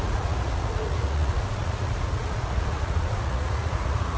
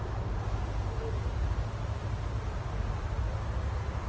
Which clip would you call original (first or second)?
second